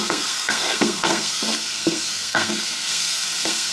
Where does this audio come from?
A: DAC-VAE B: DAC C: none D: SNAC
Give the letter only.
D